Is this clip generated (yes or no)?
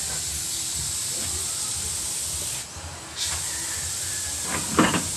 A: no